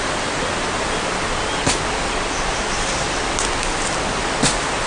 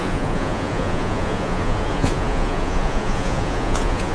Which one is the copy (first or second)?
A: second